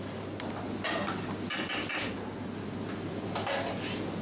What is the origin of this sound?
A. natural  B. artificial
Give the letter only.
A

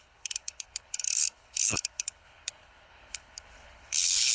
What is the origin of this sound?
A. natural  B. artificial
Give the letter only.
B